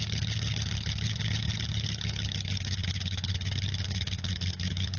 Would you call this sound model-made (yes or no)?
yes